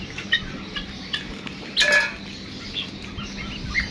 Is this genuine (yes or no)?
yes